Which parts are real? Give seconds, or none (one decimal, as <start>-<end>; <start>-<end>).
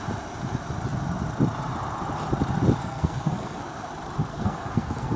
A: 0.0-2.8; 3.9-4.3